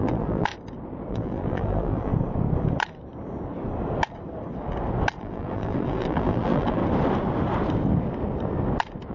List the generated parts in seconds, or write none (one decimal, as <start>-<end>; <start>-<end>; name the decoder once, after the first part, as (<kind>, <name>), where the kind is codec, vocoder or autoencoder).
0.0-0.5 (vocoder, BigVGAN v2); 1.1-2.1; 5.2-6.8